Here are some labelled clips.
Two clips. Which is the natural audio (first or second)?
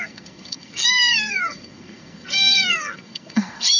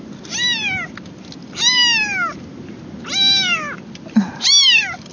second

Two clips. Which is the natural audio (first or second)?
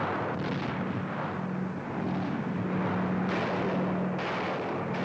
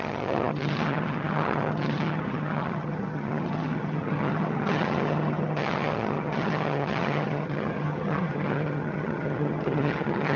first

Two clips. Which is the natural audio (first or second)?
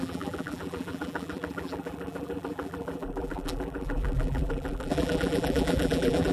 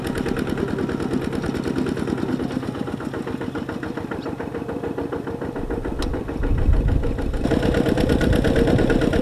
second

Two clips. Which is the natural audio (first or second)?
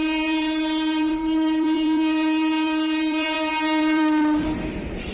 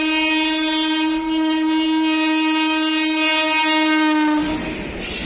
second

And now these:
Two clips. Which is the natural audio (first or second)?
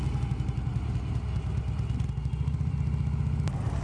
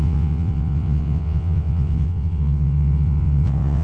first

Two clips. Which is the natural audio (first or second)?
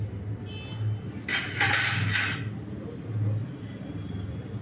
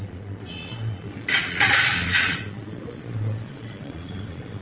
first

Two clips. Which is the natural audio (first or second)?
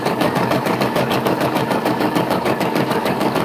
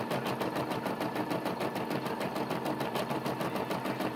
second